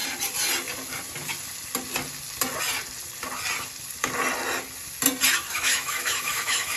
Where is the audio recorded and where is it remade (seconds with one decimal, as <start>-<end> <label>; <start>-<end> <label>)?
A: 0.0-5.5 recorded; 5.5-6.8 remade